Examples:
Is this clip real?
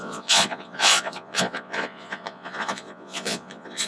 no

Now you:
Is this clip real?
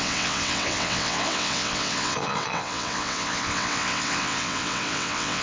no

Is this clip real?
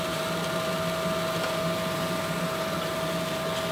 yes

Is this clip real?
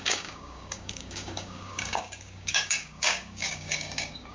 no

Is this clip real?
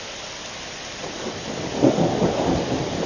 yes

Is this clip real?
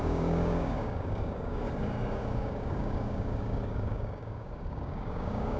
no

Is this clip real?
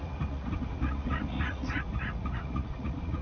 no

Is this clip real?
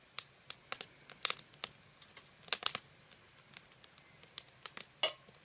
yes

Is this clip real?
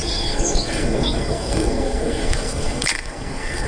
no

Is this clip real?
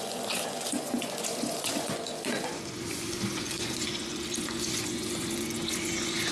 no